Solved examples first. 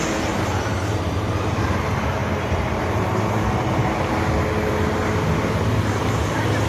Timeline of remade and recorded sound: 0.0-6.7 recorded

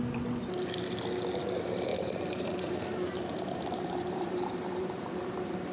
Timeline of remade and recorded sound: 0.0-1.9 recorded; 1.9-5.3 remade; 5.3-5.7 recorded